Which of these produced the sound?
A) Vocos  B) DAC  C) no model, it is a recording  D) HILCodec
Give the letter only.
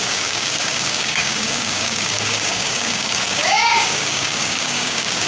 B